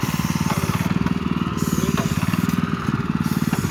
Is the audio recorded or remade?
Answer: recorded